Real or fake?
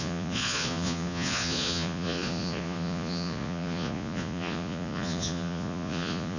fake